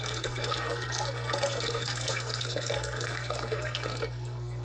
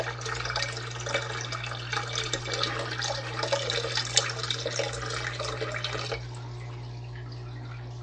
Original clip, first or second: second